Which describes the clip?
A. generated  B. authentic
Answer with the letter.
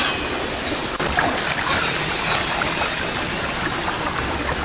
B